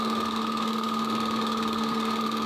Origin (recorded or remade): remade